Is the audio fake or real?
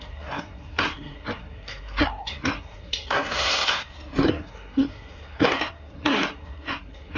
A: fake